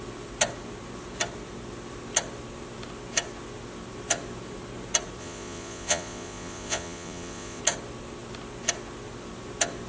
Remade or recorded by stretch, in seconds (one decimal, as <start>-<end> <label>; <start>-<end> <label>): 0.0-5.2 recorded; 5.2-7.6 remade; 7.6-9.9 recorded